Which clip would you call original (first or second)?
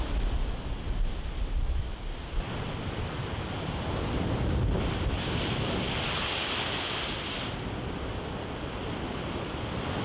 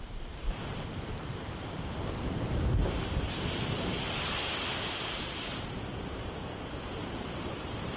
first